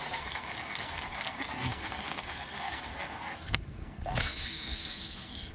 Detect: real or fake fake